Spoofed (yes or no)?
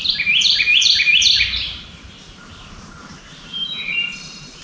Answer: yes